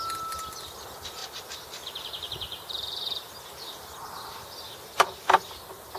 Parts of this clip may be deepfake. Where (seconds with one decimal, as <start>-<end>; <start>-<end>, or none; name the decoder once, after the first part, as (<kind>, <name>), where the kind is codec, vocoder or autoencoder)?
1.2-3.2 (vocoder, BigVGAN v2)